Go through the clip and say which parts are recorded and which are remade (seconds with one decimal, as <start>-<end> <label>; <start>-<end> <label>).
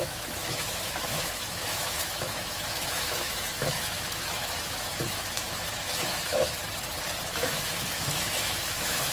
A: 0.0-6.6 remade; 6.6-7.2 recorded; 7.2-9.1 remade